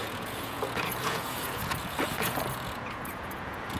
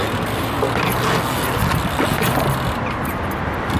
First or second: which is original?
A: second